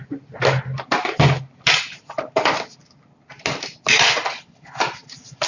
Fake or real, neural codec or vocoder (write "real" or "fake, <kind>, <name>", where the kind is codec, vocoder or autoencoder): real